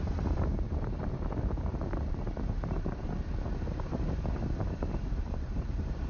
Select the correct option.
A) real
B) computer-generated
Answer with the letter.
B